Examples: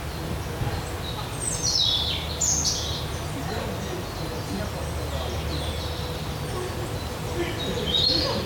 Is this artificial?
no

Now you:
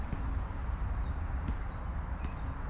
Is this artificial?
yes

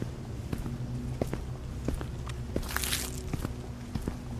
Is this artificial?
no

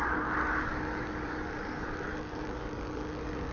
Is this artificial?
yes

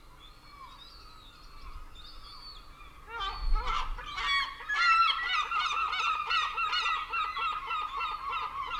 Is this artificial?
no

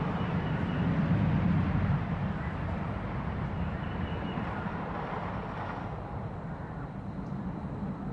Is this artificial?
yes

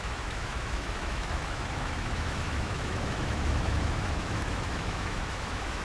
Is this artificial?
yes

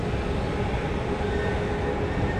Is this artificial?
no